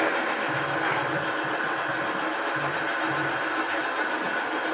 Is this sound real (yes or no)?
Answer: yes